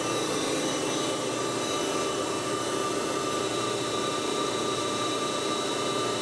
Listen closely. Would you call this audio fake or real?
fake